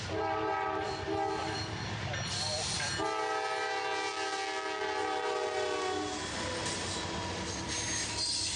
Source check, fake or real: real